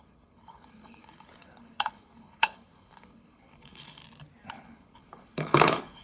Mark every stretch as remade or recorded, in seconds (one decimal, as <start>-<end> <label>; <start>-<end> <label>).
0.0-4.0 remade; 4.0-4.5 recorded; 4.5-6.0 remade